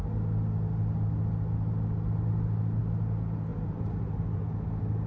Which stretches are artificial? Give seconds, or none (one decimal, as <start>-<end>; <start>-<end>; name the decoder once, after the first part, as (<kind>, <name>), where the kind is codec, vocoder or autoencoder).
3.5-4.2 (vocoder, BigVGAN v2)